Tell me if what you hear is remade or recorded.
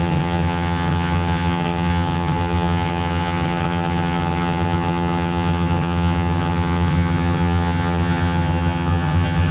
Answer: remade